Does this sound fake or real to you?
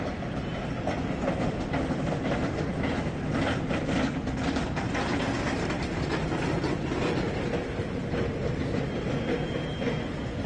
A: real